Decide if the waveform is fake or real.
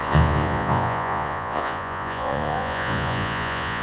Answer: fake